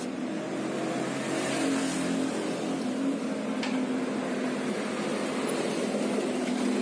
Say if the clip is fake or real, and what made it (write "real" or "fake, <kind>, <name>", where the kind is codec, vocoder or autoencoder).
real